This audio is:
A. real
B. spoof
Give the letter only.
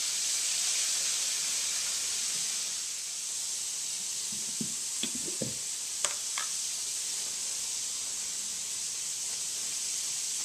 A